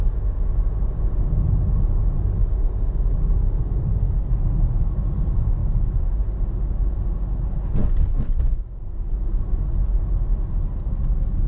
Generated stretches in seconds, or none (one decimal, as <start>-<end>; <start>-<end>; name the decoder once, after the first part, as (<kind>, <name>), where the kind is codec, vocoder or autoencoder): none